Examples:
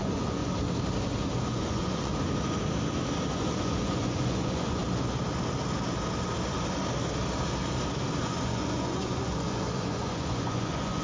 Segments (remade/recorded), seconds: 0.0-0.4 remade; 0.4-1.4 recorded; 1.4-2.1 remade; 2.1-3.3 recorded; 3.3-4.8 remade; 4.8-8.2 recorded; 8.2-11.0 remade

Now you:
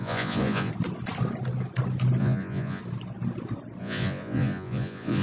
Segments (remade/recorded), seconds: 0.0-0.7 remade; 0.7-2.2 recorded; 2.2-2.8 remade; 2.8-3.8 recorded; 3.8-5.2 remade

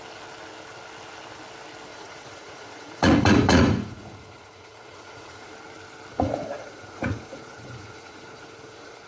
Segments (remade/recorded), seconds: 0.0-1.9 recorded; 1.9-5.5 remade; 5.5-6.1 recorded; 6.1-9.1 remade

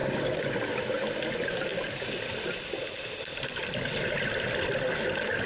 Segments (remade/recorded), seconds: 0.0-5.5 recorded